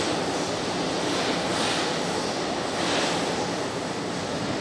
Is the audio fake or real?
real